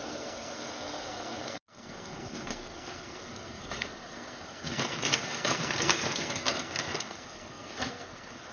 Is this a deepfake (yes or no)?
yes